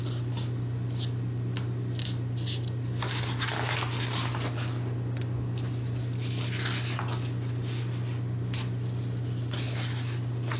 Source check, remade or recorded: recorded